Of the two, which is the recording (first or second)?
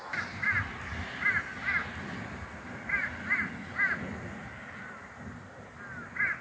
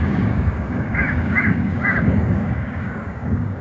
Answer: first